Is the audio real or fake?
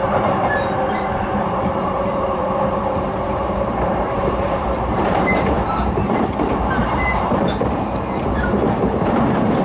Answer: fake